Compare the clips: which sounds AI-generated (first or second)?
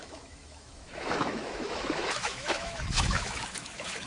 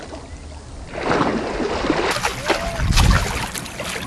first